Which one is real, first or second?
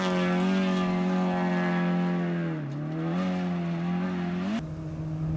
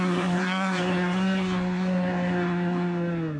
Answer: first